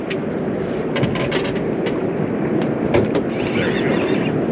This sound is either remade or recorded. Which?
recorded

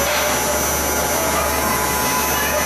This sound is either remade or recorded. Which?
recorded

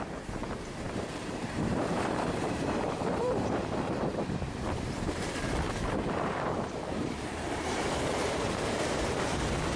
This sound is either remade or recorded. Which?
remade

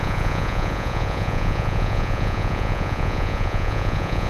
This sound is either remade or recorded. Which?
remade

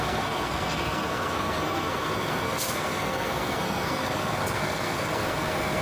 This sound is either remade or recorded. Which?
remade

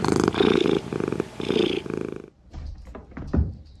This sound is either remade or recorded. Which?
recorded